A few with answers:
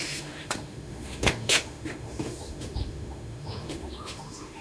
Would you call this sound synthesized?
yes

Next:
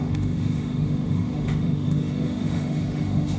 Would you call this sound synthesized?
yes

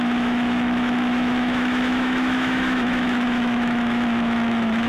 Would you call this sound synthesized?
yes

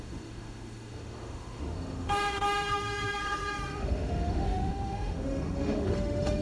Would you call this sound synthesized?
yes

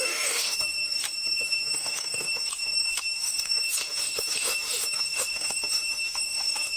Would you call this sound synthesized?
yes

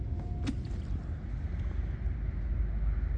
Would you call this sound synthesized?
no